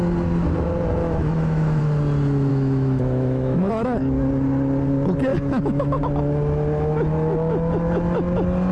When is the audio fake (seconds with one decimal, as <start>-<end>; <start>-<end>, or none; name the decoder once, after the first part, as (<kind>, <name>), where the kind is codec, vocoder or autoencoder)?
1.0-1.8 (autoencoder, DAC-VAE); 2.5-3.7; 5.3-6.0

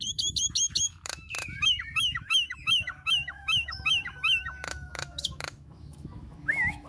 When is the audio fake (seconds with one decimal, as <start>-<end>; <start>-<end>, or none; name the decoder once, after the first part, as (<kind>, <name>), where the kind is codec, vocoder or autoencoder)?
0.0-6.9 (autoencoder, DAC-VAE)

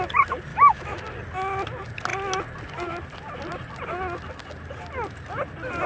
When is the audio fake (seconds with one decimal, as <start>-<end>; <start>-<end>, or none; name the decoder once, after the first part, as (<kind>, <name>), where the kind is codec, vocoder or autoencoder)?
0.5-1.0 (autoencoder, DAC-VAE)

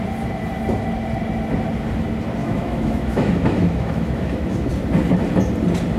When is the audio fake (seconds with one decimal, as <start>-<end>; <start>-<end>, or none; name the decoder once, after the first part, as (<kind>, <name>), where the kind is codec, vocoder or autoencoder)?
2.4-4.7 (autoencoder, DAC-VAE)